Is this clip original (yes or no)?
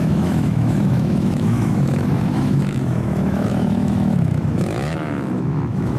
no